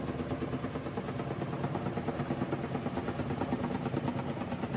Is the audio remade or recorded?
recorded